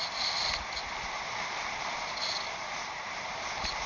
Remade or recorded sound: recorded